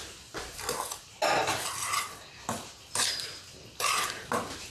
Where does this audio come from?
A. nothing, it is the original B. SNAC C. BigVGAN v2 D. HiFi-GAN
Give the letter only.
A